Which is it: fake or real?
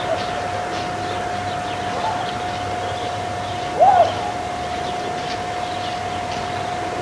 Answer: real